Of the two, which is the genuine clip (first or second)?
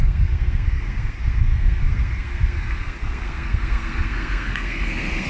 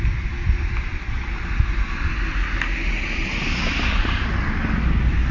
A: second